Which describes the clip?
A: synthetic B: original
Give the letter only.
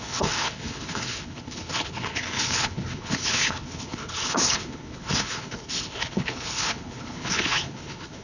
A